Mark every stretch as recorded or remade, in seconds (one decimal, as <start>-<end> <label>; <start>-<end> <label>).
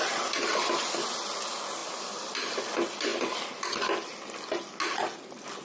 0.0-5.6 recorded